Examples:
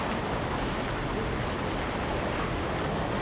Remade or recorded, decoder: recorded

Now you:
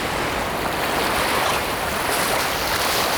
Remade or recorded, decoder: remade, vocoder, BigVGAN v2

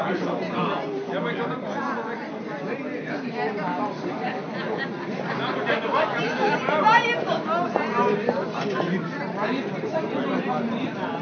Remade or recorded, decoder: recorded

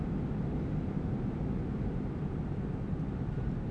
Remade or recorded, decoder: recorded